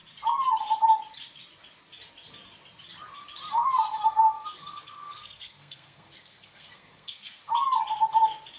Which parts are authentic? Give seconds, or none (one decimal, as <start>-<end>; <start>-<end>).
0.0-3.5; 7.4-8.6